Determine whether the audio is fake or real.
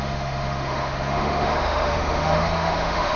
fake